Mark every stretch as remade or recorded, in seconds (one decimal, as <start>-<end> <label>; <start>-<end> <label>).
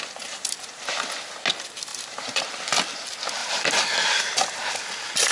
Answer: 0.0-1.9 recorded; 1.9-2.4 remade; 2.4-3.4 recorded; 3.4-4.2 remade; 4.2-5.3 recorded